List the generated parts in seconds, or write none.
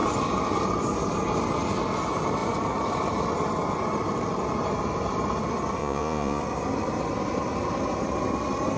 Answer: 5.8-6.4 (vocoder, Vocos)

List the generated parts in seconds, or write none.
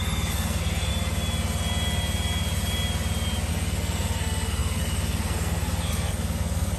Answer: 0.0-0.9 (codec, SNAC); 3.5-6.8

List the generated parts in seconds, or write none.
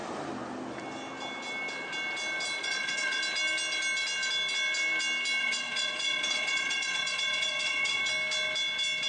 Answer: 2.6-3.2 (vocoder, Vocos); 5.4-8.0